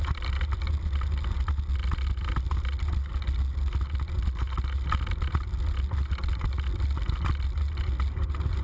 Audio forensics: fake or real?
real